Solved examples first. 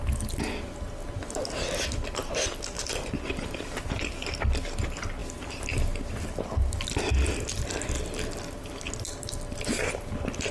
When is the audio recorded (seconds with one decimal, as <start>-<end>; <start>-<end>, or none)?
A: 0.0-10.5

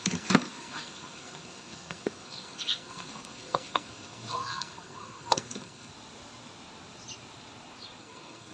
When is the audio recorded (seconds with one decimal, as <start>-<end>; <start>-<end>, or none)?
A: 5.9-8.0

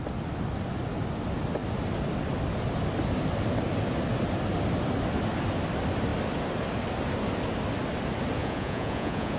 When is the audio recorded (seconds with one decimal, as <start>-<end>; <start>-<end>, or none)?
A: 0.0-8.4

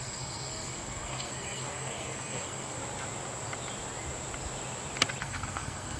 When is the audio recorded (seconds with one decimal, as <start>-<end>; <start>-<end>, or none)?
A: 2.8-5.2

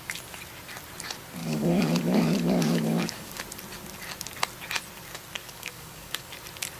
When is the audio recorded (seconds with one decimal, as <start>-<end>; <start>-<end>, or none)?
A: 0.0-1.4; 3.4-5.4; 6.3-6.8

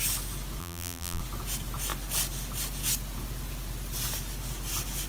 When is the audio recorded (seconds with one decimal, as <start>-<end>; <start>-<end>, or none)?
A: 0.0-0.6; 1.2-5.1

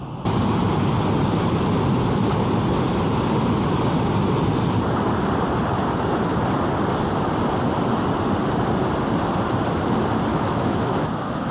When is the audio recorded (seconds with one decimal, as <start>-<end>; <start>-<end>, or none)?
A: 0.0-10.3